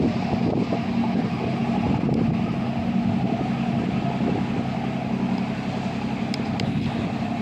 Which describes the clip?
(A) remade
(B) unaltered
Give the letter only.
B